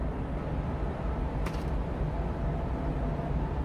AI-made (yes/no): yes